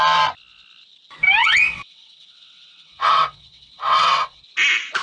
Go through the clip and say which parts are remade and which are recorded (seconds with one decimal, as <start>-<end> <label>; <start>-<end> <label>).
0.0-1.4 recorded; 1.4-4.4 remade; 4.4-5.0 recorded